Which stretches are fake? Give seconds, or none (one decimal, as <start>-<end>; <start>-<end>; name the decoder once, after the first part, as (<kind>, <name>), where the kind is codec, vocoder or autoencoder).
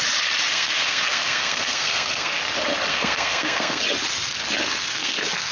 0.5-2.4 (codec, SNAC); 2.9-3.8; 4.6-5.5